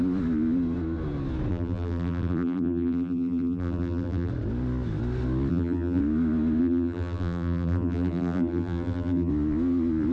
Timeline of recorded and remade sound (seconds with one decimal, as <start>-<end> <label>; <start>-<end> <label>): 0.0-1.5 recorded; 1.5-4.3 remade; 4.3-5.5 recorded; 5.5-6.0 remade; 6.0-6.6 recorded; 6.6-9.3 remade; 9.3-10.1 recorded